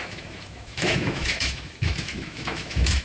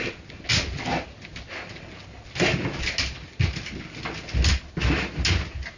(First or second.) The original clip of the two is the second